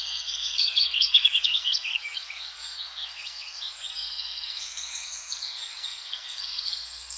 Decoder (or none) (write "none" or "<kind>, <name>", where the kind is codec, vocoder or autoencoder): codec, SNAC